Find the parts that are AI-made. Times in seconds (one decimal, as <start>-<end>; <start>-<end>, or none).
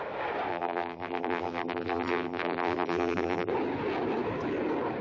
0.5-3.5